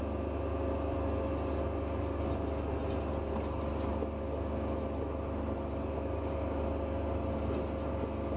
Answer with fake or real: real